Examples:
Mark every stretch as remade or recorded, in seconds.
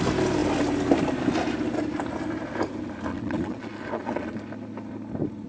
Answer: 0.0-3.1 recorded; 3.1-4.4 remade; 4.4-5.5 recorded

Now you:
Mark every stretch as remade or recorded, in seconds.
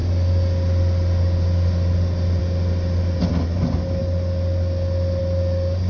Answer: 0.0-5.9 recorded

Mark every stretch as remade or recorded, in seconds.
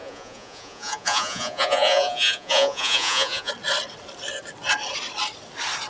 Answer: 0.0-3.5 remade; 3.5-5.9 recorded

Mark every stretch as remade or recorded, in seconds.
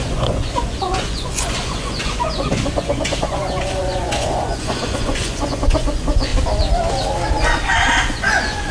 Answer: 0.0-6.3 remade; 6.3-8.0 recorded; 8.0-8.7 remade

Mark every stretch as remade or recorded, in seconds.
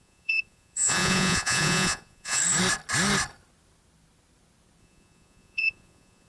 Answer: 0.0-2.4 remade; 2.4-4.8 recorded; 4.8-6.3 remade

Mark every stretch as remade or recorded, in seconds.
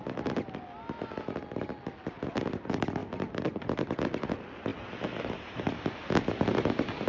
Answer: 0.0-7.1 recorded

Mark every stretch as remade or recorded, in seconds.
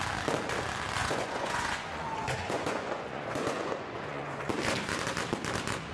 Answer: 0.0-1.0 recorded; 1.0-4.5 remade; 4.5-5.9 recorded